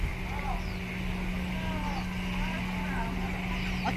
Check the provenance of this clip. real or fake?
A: real